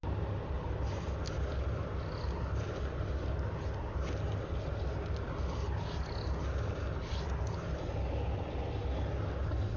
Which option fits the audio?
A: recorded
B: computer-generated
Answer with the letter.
A